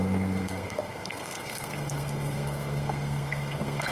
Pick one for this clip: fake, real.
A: fake